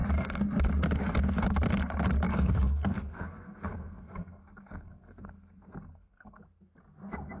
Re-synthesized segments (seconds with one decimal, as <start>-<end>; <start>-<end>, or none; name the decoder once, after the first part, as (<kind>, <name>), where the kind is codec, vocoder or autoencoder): 2.3-6.4 (codec, SNAC)